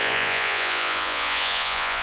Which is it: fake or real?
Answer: fake